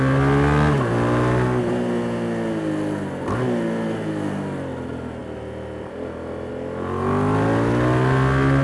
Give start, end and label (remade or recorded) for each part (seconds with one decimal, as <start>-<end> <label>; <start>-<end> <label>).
0.0-8.6 recorded